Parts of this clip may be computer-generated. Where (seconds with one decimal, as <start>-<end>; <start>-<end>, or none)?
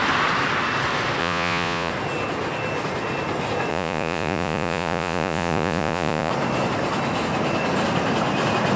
1.2-1.9; 3.7-6.3